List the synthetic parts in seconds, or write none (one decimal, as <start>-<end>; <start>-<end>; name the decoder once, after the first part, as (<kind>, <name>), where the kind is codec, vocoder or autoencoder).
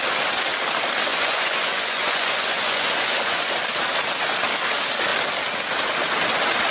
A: 1.1-3.5 (vocoder, Vocos)